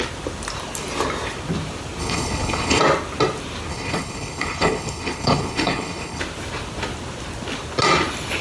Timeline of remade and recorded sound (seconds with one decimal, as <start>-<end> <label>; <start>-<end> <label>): 0.0-2.0 recorded; 2.0-2.8 remade; 2.8-3.7 recorded; 3.7-6.2 remade; 6.2-8.4 recorded